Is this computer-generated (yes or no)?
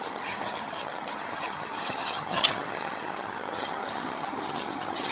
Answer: yes